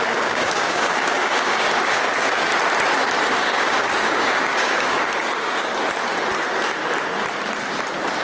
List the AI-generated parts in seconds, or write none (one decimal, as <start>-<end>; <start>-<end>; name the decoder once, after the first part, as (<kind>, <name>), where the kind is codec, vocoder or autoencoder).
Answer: 0.0-2.5 (codec, DAC); 3.2-5.7